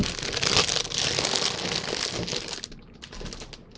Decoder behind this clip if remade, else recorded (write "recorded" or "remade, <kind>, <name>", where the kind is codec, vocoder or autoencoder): recorded